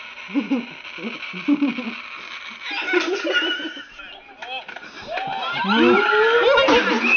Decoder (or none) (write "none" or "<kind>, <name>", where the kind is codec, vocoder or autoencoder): none